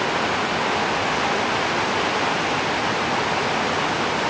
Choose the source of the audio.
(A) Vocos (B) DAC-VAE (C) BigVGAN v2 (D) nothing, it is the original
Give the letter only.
D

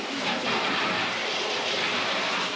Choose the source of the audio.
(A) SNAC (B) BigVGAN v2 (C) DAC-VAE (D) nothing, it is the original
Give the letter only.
B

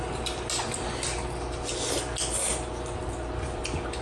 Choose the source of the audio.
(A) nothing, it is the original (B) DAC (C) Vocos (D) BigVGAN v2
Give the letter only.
A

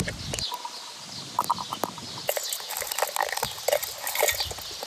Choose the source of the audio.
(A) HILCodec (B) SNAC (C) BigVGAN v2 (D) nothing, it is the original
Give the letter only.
D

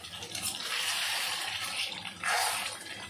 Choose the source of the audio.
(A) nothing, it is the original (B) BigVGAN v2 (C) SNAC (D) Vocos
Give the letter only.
B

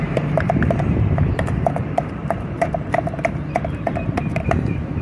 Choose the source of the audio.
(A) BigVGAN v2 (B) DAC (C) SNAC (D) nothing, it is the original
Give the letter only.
A